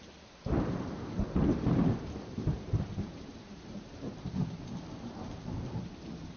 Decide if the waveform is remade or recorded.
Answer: remade